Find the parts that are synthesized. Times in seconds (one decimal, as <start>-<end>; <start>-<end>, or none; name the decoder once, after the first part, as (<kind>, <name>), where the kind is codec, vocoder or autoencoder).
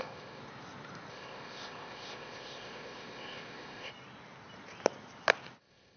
0.0-0.4 (codec, ZipCodec); 1.1-3.9; 5.6-6.0